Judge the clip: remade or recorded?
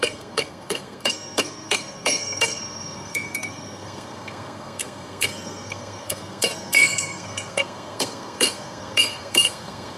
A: remade